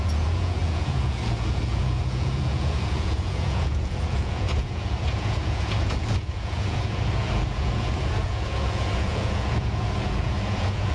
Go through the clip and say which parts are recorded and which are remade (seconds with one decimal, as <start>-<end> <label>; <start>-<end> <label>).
0.0-10.9 remade